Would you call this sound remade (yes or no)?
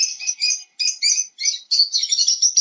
no